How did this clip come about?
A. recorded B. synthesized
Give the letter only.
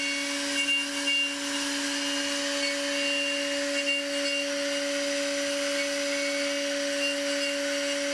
A